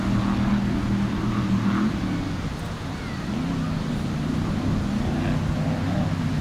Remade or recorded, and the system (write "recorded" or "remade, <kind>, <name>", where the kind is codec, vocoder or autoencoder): recorded